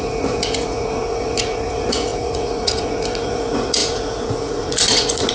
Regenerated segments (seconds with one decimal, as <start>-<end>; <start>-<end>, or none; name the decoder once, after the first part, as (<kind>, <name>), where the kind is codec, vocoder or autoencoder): 0.0-5.3 (vocoder, Vocos)